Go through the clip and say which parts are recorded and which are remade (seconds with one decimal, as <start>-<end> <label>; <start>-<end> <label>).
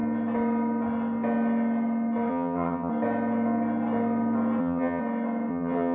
0.0-2.3 recorded; 2.3-2.9 remade; 2.9-4.6 recorded; 4.6-5.0 remade; 5.0-5.5 recorded; 5.5-5.9 remade